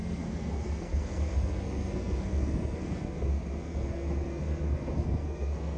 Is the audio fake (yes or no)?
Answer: yes